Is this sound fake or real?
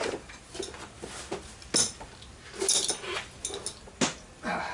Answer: real